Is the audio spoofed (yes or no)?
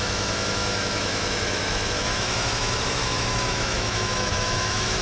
yes